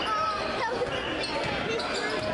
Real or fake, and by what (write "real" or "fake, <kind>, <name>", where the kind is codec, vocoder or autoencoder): real